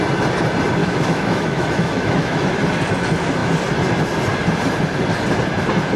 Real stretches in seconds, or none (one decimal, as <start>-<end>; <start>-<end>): 0.0-0.8; 2.5-6.0